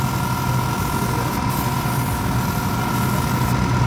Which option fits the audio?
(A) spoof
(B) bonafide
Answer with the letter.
B